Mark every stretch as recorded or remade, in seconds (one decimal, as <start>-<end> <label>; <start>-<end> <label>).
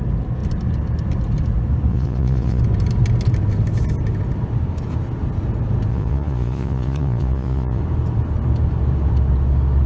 0.0-1.9 recorded; 1.9-2.6 remade; 2.6-5.9 recorded; 5.9-7.8 remade; 7.8-9.9 recorded